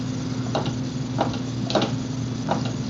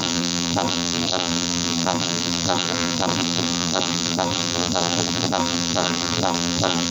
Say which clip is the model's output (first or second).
second